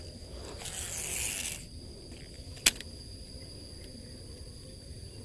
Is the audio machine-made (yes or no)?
no